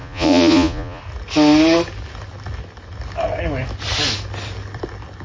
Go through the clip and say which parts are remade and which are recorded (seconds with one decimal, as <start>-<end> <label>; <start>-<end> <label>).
0.0-1.0 remade; 1.0-5.2 recorded